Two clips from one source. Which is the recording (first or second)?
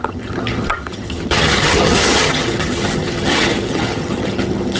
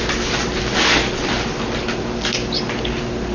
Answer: second